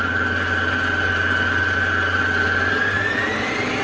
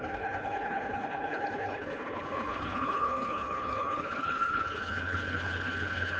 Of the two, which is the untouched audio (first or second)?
first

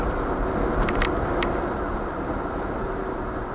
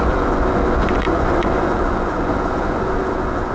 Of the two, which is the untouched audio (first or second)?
first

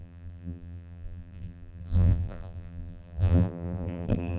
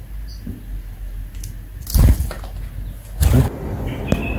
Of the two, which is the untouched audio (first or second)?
second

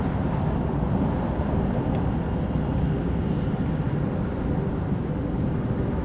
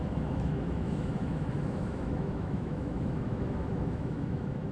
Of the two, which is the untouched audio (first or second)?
first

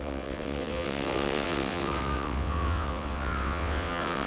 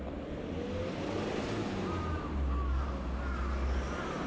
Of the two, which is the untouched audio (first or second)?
second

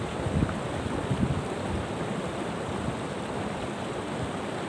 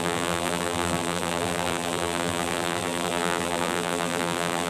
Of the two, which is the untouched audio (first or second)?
first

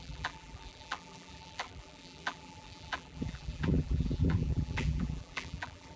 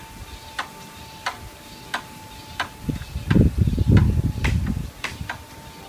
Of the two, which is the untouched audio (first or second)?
second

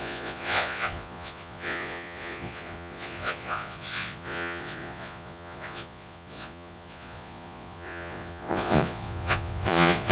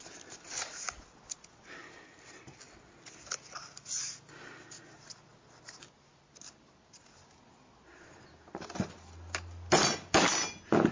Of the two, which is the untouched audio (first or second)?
second